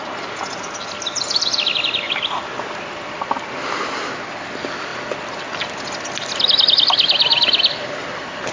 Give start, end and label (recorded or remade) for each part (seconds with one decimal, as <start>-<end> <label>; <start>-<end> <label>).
0.0-8.5 recorded